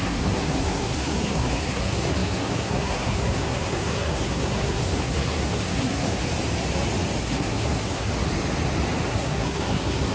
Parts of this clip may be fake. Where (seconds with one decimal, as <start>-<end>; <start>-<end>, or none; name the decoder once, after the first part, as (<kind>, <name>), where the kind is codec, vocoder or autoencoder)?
0.0-6.2 (codec, SNAC); 7.2-8.1; 9.1-10.1